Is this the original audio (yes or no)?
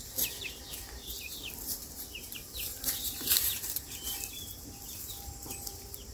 no